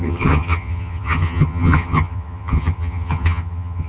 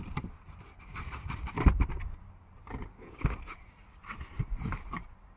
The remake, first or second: first